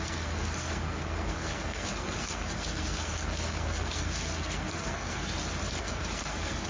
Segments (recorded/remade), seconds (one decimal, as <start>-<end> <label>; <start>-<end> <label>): 0.0-5.2 remade; 5.2-5.8 recorded; 5.8-6.7 remade